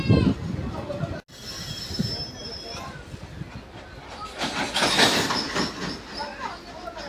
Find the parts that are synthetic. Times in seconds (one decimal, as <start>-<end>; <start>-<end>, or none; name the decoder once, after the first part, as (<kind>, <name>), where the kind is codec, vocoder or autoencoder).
2.4-4.6 (vocoder, BigVGAN v2)